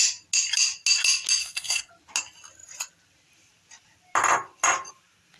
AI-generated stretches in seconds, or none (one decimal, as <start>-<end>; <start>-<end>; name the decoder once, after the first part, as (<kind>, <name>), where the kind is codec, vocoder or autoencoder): 1.4-1.9 (codec, SNAC)